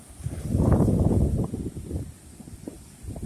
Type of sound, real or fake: fake